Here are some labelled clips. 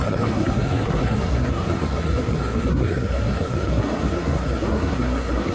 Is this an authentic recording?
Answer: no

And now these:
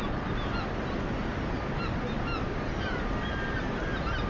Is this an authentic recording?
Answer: yes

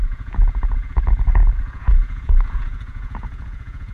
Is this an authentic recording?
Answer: no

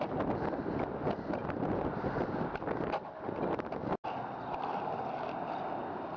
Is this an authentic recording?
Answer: yes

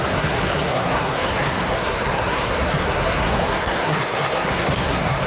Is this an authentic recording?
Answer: no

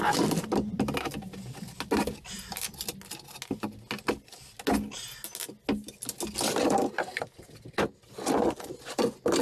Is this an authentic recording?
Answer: yes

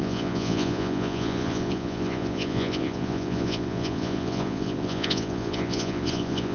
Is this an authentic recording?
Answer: no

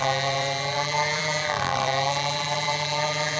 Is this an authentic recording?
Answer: no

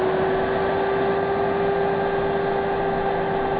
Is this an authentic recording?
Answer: yes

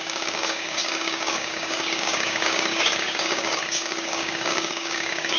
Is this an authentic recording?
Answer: no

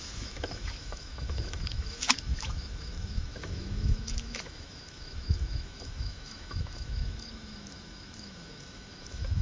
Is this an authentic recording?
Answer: no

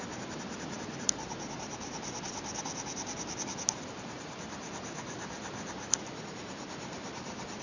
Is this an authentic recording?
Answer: yes